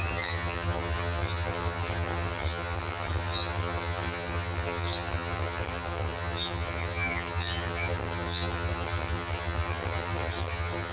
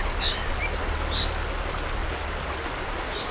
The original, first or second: second